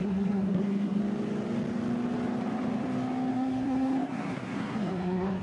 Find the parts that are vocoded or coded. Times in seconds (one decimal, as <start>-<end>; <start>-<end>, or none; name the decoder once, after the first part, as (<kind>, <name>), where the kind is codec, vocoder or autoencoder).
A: 0.0-1.0 (codec, SNAC); 3.3-5.4